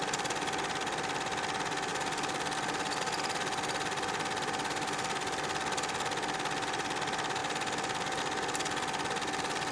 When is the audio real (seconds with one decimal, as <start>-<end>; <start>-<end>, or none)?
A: 0.0-9.7